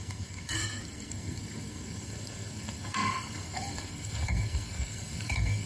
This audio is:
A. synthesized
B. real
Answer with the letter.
A